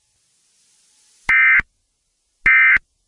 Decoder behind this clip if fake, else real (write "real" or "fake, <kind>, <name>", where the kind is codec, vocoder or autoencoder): real